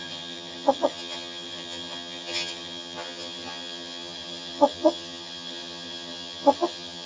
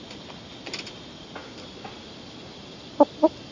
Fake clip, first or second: first